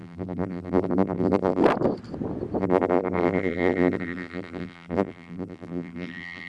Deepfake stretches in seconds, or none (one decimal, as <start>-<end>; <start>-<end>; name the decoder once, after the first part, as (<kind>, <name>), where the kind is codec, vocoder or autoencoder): 0.0-1.6 (vocoder, BigVGAN v2); 2.6-6.5

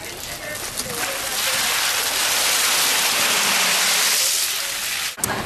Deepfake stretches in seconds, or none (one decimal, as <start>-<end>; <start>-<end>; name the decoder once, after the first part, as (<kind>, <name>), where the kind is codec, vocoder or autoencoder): 2.9-4.2 (vocoder, BigVGAN v2)

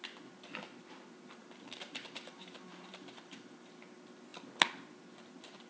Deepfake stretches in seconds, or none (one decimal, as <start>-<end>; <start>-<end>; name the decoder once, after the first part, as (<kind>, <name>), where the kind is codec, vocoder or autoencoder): 1.4-3.7 (vocoder, BigVGAN v2)